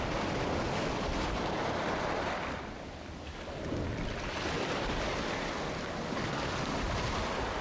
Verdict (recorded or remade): recorded